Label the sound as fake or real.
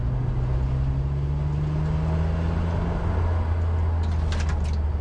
real